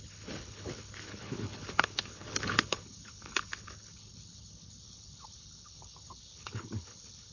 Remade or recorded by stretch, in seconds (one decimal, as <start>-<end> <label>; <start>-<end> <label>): 0.0-7.3 remade